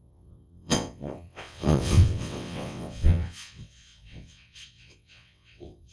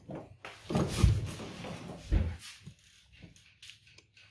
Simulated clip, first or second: first